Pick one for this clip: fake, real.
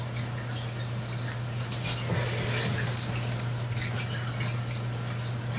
real